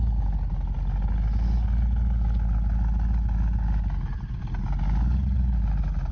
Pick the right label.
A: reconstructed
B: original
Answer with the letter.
B